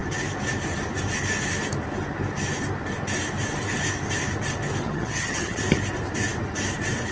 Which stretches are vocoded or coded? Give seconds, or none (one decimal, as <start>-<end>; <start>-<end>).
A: 4.8-5.6